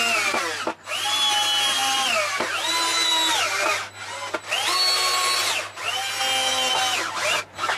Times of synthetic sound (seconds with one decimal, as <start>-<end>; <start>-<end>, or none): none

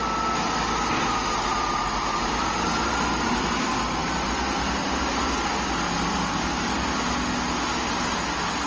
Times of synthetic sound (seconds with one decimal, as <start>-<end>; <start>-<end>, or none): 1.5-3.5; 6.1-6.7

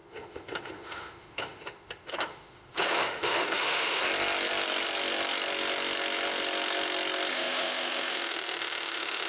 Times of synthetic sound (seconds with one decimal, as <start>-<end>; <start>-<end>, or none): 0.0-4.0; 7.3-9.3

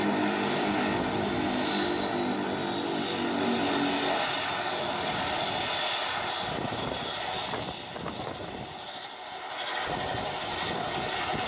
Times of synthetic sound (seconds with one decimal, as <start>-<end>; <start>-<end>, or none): none